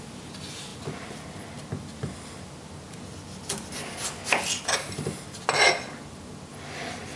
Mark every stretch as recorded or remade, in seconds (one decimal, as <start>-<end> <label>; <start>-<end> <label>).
0.0-7.2 recorded